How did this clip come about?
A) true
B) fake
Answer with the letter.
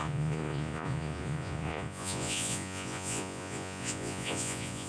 B